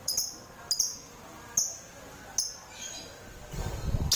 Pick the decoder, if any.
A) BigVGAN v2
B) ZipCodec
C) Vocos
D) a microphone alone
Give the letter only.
D